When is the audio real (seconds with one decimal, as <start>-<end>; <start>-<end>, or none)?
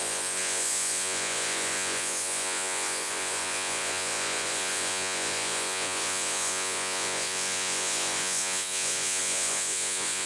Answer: none